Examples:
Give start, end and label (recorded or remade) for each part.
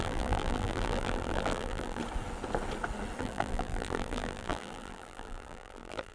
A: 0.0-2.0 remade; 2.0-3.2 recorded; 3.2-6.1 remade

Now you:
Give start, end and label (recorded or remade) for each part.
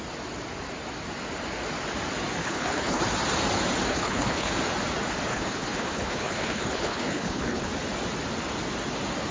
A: 0.0-2.4 recorded; 2.4-3.0 remade; 3.0-3.9 recorded; 3.9-4.5 remade; 4.5-5.3 recorded; 5.3-7.7 remade; 7.7-9.3 recorded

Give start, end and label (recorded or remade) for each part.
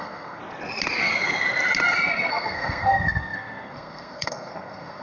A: 0.0-0.4 remade; 0.4-2.3 recorded; 2.3-5.0 remade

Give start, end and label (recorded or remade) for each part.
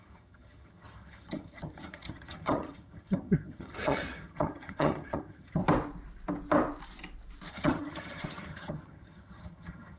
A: 0.0-5.6 remade; 5.6-7.5 recorded; 7.5-10.0 remade